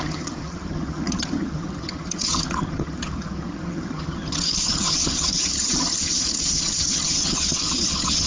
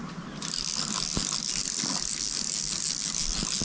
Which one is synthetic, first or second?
first